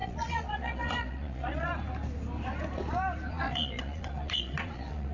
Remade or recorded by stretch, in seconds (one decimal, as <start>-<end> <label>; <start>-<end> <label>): 0.0-1.7 remade; 1.7-3.3 recorded; 3.3-5.1 remade